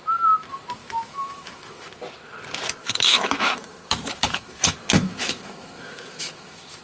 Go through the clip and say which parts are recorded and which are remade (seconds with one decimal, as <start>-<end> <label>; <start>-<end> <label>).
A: 0.0-0.8 recorded; 0.8-2.0 remade; 2.0-2.8 recorded; 2.8-6.8 remade